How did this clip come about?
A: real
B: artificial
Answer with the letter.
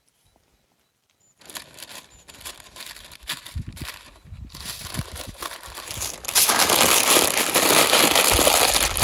A